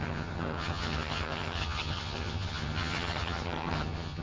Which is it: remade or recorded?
remade